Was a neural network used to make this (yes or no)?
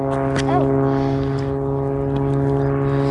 no